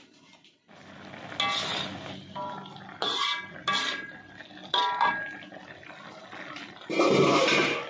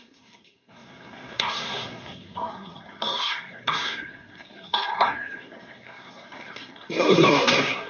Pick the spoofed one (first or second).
second